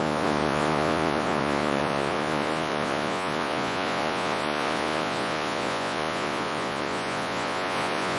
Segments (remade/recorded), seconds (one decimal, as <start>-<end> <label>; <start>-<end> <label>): 0.0-8.2 remade

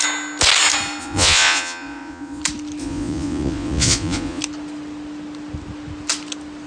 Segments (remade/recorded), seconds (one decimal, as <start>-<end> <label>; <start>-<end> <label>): 0.0-1.0 recorded; 1.0-2.4 remade; 2.4-2.8 recorded; 2.8-4.4 remade; 4.4-6.7 recorded

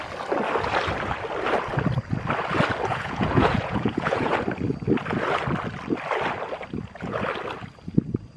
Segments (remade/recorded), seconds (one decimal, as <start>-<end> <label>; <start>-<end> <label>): 0.0-2.9 recorded; 2.9-4.3 remade; 4.3-8.4 recorded

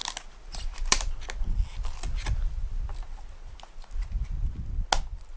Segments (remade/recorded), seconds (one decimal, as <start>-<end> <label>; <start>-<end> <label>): 0.0-5.4 recorded